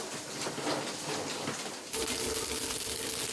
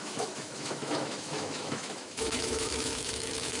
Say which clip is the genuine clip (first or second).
first